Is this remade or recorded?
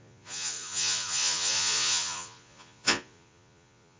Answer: remade